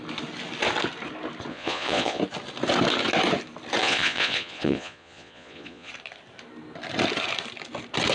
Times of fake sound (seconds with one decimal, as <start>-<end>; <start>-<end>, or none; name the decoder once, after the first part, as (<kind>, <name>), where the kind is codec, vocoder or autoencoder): 1.5-2.2 (vocoder, Vocos); 3.8-5.9